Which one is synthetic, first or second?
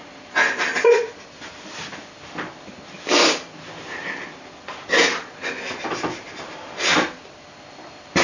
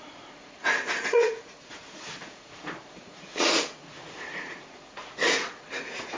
second